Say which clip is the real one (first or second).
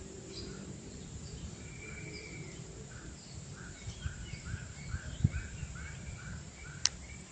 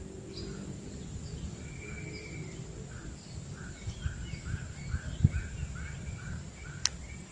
second